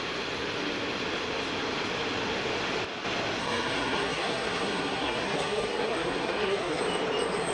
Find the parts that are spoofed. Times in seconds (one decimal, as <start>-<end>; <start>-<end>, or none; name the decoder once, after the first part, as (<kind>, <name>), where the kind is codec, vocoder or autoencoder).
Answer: 3.4-6.8 (codec, SNAC)